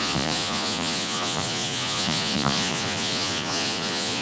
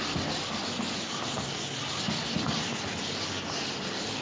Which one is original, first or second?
second